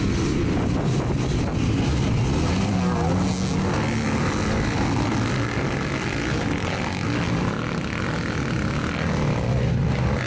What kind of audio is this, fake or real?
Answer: real